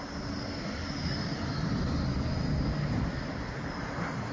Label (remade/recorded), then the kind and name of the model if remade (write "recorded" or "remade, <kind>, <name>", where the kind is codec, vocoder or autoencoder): recorded